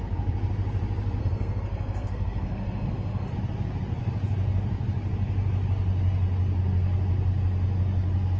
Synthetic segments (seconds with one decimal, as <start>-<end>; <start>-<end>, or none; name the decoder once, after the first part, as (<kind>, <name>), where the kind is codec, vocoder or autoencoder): 1.2-3.3 (codec, SNAC)